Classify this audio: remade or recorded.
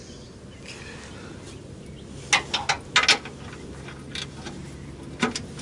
recorded